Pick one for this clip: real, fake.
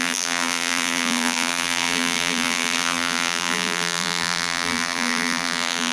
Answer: fake